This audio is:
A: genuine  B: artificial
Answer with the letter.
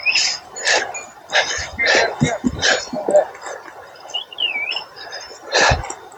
A